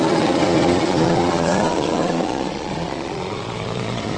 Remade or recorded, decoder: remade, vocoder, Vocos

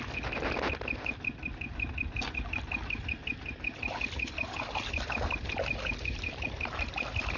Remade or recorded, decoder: recorded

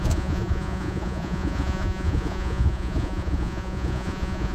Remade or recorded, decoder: remade, vocoder, Vocos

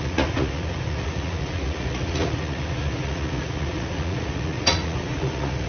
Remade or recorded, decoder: remade, vocoder, Vocos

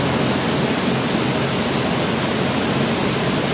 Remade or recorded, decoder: recorded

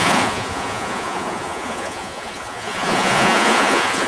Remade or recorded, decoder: remade, vocoder, Vocos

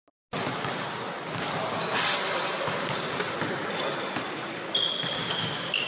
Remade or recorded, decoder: recorded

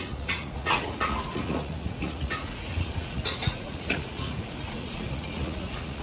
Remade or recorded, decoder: remade, vocoder, Vocos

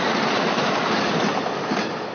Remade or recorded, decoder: recorded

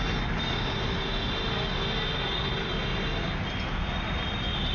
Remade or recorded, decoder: recorded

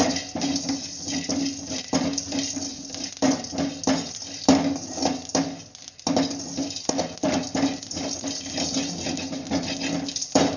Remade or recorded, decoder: recorded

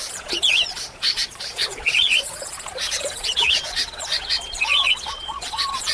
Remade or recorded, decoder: remade, vocoder, Vocos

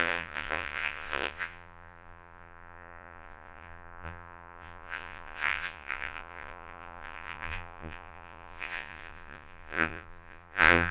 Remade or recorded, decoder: remade, vocoder, Vocos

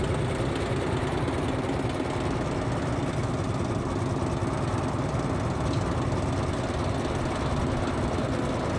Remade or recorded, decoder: recorded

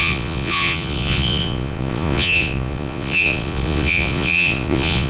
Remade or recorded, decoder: remade, vocoder, Vocos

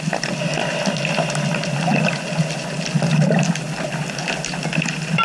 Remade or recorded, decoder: recorded